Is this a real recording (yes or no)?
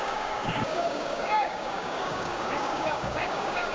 no